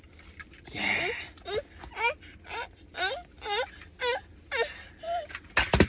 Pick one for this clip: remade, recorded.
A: recorded